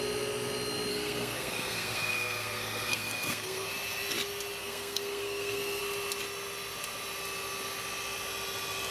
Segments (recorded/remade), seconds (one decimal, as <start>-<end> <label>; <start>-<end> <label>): 0.0-0.9 recorded; 0.9-3.7 remade; 3.7-4.6 recorded; 4.6-5.8 remade; 5.8-8.9 recorded